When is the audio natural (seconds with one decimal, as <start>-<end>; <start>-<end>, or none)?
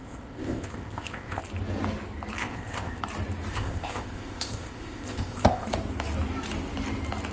1.4-2.4; 3.0-3.5; 5.7-7.3